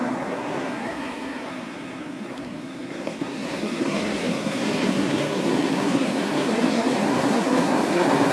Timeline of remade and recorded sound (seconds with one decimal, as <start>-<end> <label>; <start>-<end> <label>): 0.0-8.3 remade